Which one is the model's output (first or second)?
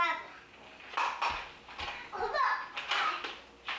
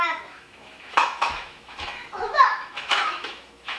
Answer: second